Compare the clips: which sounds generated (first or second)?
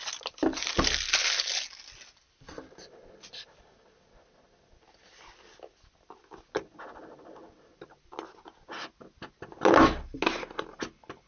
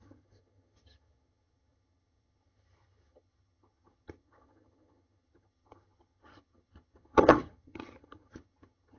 second